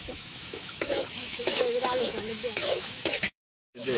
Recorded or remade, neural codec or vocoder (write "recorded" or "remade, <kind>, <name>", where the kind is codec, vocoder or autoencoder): remade, autoencoder, DAC-VAE